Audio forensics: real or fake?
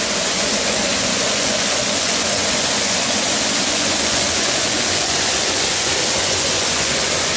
fake